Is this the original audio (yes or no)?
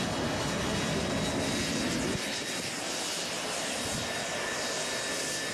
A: yes